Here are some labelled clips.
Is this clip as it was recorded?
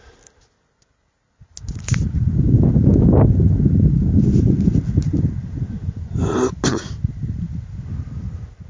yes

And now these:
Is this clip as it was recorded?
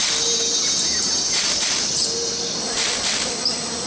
yes